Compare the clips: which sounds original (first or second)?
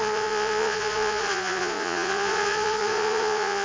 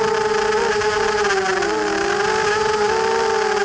second